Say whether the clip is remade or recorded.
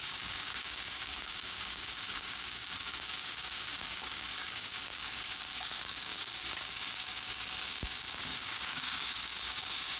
remade